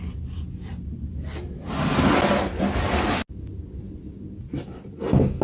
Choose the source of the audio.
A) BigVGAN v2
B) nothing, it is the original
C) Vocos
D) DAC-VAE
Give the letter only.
B